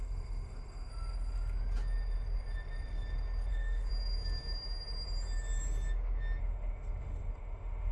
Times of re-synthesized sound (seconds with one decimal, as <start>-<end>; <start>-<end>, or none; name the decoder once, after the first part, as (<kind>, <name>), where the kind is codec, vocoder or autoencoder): 0.0-0.9 (autoencoder, DAC-VAE); 3.5-3.9; 6.4-7.9